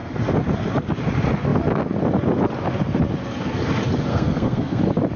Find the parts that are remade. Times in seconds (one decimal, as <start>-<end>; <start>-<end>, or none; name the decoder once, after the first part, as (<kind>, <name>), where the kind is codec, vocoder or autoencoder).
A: 4.1-4.8 (codec, SNAC)